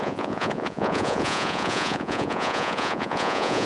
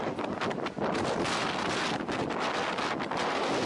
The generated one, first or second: first